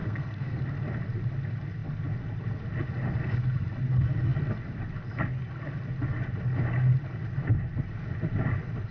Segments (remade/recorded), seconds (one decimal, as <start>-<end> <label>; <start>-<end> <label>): 0.0-0.6 remade; 0.6-8.9 recorded